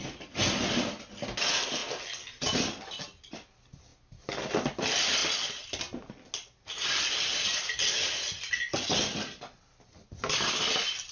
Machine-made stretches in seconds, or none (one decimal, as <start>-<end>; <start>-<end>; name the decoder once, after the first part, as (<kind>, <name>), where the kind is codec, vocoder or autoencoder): none